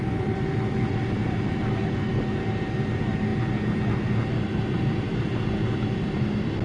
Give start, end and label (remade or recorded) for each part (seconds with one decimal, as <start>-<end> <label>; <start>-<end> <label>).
0.0-1.6 remade; 1.6-2.7 recorded; 2.7-3.3 remade; 3.3-4.6 recorded; 4.6-5.1 remade; 5.1-5.9 recorded; 5.9-6.6 remade